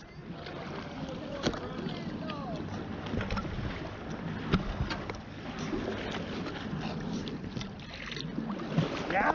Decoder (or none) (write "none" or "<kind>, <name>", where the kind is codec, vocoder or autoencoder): none